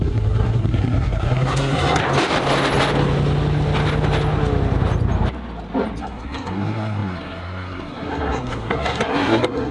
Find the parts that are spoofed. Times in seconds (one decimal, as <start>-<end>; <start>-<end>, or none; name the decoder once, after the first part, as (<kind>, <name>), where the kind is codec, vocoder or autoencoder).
0.0-2.0 (codec, SNAC); 6.0-9.7